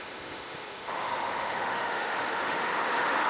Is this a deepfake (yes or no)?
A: yes